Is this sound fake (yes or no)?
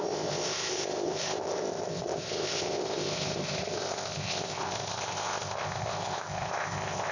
yes